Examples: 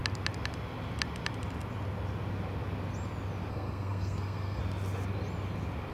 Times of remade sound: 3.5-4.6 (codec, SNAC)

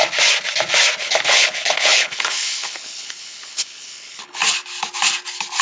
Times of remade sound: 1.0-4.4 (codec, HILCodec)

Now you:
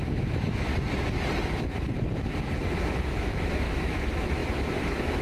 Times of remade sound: 0.0-0.7 (autoencoder, DAC-VAE); 3.3-5.2

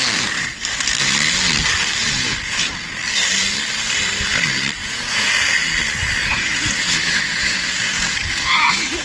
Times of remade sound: 2.0-2.7 (vocoder, Vocos); 4.8-5.3; 6.2-9.0

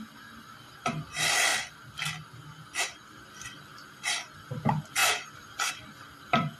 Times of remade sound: 0.0-1.5 (vocoder, BigVGAN v2); 3.3-6.6